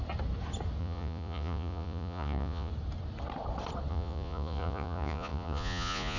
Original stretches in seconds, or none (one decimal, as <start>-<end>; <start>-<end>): 0.0-0.8; 2.7-3.9